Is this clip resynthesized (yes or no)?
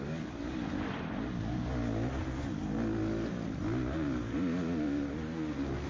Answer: no